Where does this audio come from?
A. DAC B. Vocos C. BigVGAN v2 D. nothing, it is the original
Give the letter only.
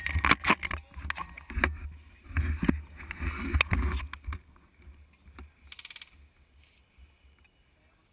D